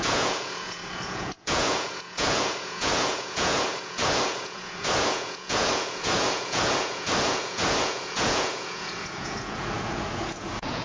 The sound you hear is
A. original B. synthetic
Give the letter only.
B